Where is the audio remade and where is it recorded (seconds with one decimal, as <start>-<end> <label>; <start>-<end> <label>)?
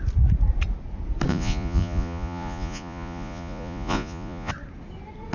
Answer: 0.0-1.3 recorded; 1.3-4.5 remade; 4.5-5.3 recorded